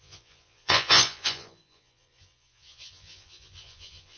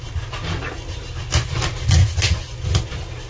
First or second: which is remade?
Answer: first